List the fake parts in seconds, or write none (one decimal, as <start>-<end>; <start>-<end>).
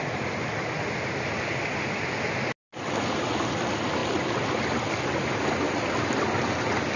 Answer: none